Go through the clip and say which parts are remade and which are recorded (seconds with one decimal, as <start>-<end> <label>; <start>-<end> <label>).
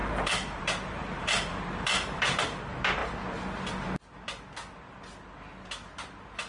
0.0-2.4 remade; 2.4-6.5 recorded